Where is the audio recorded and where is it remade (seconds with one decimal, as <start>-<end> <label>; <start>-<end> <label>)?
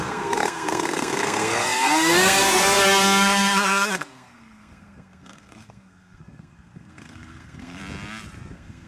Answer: 0.0-7.8 remade; 7.8-8.5 recorded; 8.5-8.9 remade